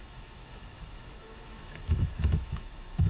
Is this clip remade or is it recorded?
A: remade